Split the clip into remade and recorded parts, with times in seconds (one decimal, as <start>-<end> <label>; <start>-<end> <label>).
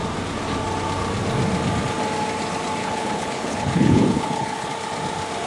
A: 0.0-2.8 recorded; 2.8-4.7 remade; 4.7-5.5 recorded